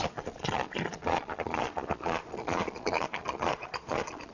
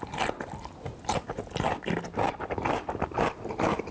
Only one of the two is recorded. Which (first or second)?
second